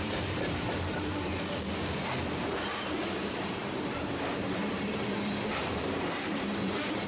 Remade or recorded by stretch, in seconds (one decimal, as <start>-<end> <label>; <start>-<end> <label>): 0.0-1.3 remade; 1.3-2.4 recorded; 2.4-7.1 remade